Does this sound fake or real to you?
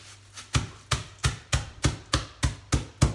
real